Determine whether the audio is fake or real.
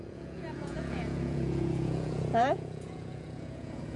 fake